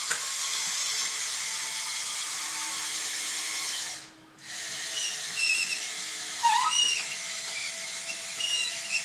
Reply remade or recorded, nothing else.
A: remade